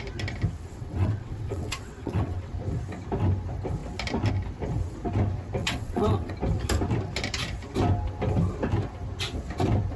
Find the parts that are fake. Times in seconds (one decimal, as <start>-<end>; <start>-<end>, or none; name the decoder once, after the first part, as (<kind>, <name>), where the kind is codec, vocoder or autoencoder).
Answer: 0.7-2.5 (vocoder, WaveNeXt); 5.6-6.3